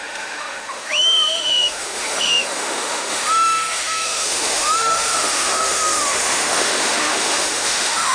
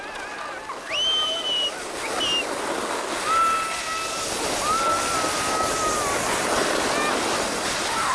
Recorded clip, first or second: second